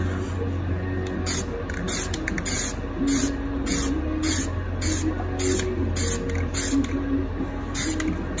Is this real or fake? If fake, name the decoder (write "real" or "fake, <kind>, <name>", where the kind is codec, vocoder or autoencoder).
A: real